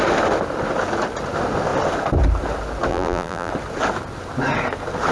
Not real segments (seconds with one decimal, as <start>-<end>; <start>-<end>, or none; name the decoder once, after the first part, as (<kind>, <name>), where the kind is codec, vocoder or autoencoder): 2.9-3.5 (vocoder, BigVGAN v2)